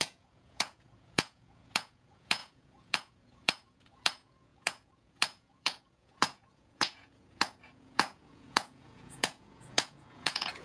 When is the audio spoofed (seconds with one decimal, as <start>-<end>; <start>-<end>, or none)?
0.0-10.6